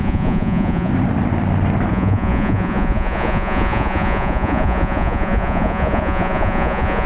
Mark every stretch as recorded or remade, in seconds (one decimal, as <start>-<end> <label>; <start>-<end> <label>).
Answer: 0.0-0.9 remade; 0.9-1.9 recorded; 1.9-7.1 remade